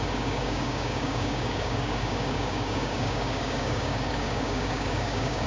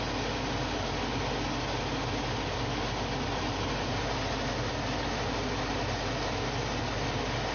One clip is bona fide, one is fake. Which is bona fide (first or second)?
second